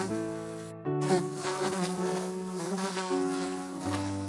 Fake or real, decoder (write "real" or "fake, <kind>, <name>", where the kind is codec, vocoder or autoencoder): fake, codec, SNAC